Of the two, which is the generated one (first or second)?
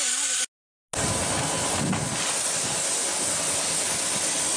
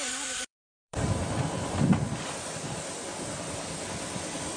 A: second